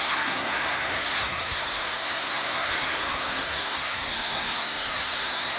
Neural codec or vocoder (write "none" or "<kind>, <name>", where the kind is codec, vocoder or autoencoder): codec, SNAC